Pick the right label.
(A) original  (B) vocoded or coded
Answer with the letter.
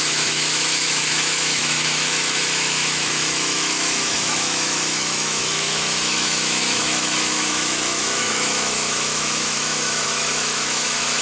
B